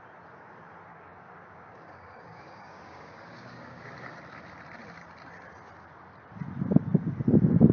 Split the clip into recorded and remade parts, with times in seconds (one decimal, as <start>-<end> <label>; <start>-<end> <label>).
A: 0.0-0.9 recorded; 0.9-3.9 remade; 3.9-7.7 recorded